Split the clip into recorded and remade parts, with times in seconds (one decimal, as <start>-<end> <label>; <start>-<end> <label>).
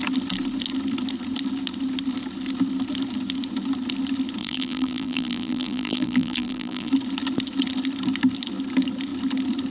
0.0-4.4 recorded; 4.4-6.9 remade; 6.9-9.7 recorded